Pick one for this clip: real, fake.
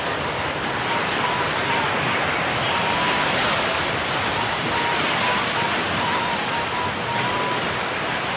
real